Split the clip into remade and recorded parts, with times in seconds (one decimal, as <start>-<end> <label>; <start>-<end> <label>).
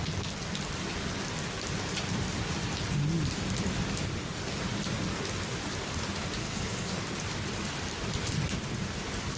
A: 0.0-6.4 recorded; 6.4-7.0 remade; 7.0-9.4 recorded